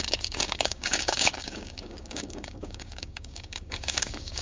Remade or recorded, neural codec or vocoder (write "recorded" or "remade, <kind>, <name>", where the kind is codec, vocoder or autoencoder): remade, codec, DAC